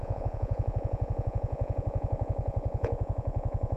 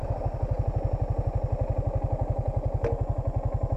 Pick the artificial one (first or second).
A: first